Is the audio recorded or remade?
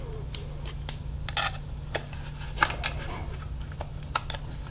recorded